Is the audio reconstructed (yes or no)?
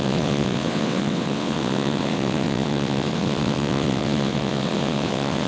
yes